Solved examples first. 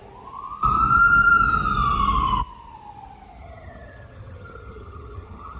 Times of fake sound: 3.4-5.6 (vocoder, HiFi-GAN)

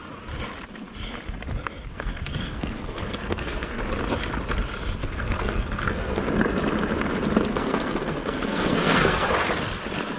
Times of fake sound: 1.9-3.8 (codec, SNAC); 5.0-6.2; 7.5-9.3

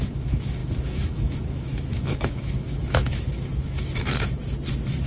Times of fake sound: 0.0-4.4 (autoencoder, DAC-VAE)

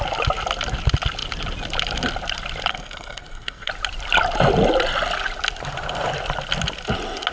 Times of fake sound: 2.7-3.7 (codec, SNAC)

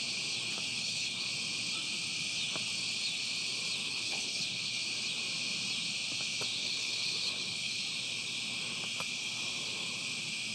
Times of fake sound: 0.7-1.3 (codec, HILCodec); 3.8-4.8; 6.6-7.7